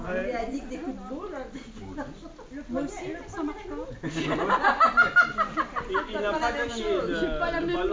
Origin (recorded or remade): recorded